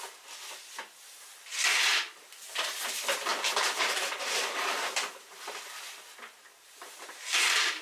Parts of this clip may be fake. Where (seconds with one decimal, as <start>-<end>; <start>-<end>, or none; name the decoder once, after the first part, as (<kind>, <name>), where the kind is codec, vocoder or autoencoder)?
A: none